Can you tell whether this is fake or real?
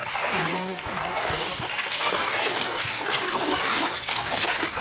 fake